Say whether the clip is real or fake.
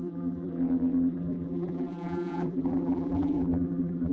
fake